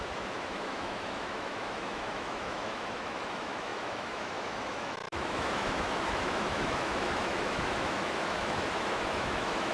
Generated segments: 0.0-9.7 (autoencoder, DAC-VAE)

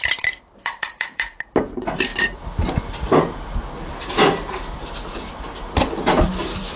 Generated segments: 0.0-2.1 (vocoder, BigVGAN v2); 6.2-6.8

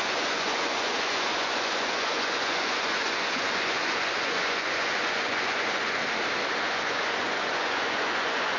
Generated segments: 0.0-6.0 (vocoder, Vocos); 6.7-8.6

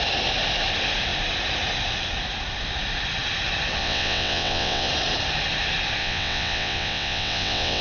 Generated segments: 3.8-4.9 (vocoder, WaveNeXt); 6.0-7.8

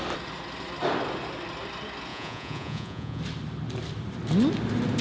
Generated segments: 2.1-3.2 (vocoder, Vocos)

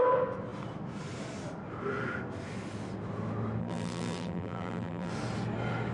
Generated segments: 3.6-5.1 (vocoder, BigVGAN v2)

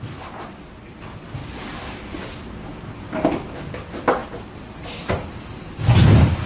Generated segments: none

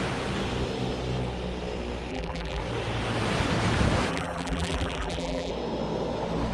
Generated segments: 2.1-2.6 (vocoder, BigVGAN v2); 4.1-5.5